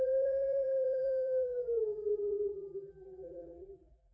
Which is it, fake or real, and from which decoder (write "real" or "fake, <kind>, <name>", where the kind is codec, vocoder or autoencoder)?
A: fake, vocoder, BigVGAN v2